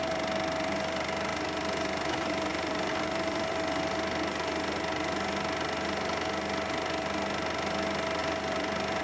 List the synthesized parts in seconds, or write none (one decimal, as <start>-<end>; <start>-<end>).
1.3-2.1; 2.5-3.8; 8.2-9.0

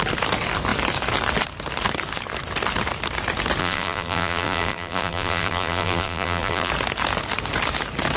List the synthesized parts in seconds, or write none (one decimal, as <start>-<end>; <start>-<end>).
3.6-6.7

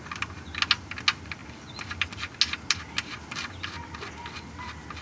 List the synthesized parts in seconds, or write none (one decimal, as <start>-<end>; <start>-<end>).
none

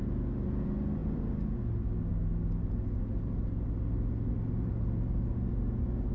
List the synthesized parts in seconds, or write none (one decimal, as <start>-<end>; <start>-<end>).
1.0-1.6

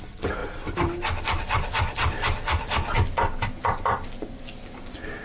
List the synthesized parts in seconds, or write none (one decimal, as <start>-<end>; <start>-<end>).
0.0-0.4; 1.2-2.0

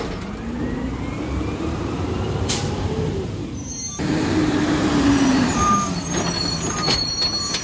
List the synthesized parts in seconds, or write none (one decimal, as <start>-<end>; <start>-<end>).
1.1-5.7; 6.4-7.1